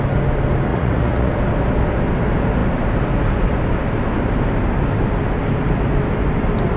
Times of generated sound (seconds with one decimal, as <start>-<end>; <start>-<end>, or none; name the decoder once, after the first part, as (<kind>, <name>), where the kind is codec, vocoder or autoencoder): 0.7-1.3 (vocoder, Vocos)